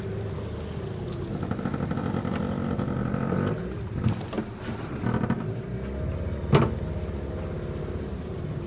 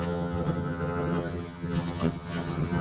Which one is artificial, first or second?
second